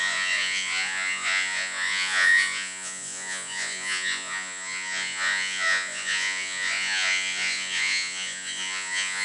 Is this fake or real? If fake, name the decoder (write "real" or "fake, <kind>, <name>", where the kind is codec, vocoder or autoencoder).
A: fake, vocoder, Vocos